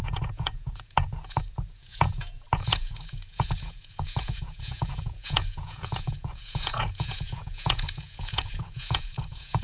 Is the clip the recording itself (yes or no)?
no